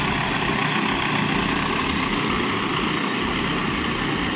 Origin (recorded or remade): recorded